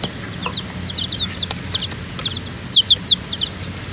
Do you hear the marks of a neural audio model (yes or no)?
no